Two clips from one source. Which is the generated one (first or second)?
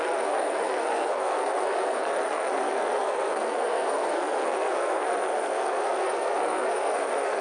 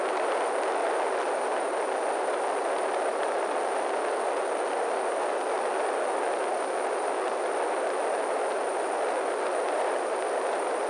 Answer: first